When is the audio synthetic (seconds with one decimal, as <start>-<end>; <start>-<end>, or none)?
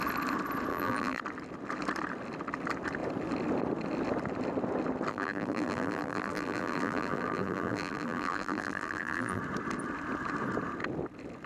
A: 0.7-1.2; 5.1-9.4